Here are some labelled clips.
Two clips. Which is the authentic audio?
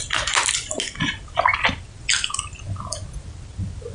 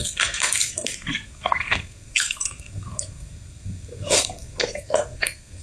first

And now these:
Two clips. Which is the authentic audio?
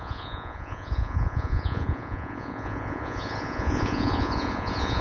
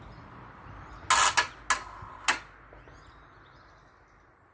second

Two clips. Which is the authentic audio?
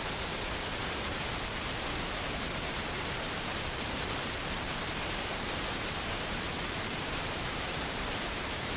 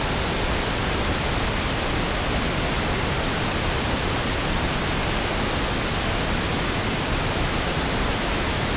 second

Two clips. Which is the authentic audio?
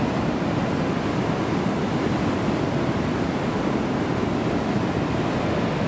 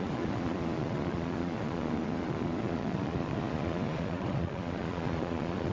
first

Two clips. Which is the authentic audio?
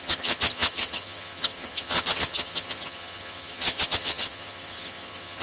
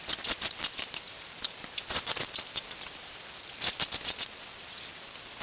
second